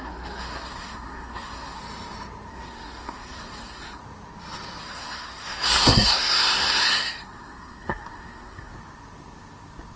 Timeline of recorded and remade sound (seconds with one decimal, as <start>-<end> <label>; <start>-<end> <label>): 0.0-1.8 remade; 1.8-2.5 recorded; 2.5-4.0 remade; 4.0-4.8 recorded; 4.8-8.7 remade; 8.7-10.0 recorded